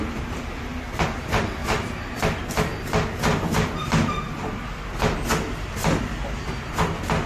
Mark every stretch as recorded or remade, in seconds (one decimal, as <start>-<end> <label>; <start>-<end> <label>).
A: 0.0-7.3 recorded